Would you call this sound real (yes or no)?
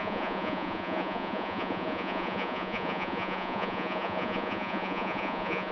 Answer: no